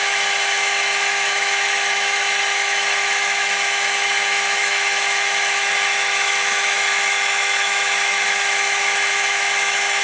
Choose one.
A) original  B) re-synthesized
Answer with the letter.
B